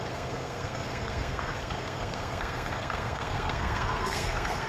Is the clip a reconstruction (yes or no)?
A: yes